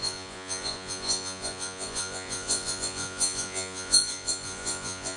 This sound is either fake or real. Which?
fake